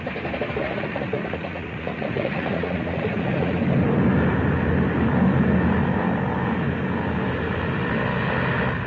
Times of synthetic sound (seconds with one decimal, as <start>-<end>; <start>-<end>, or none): 0.6-3.6